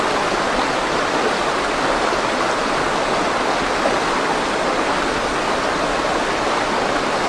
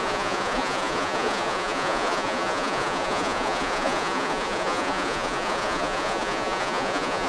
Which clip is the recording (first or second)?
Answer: first